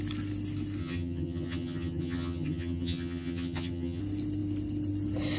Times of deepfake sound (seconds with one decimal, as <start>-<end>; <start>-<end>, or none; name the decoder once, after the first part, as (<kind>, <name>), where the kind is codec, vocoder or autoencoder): 0.8-4.0 (vocoder, HiFi-GAN)